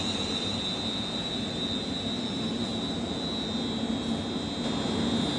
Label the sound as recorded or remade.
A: recorded